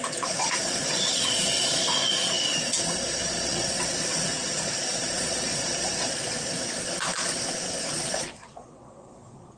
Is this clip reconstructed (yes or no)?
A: yes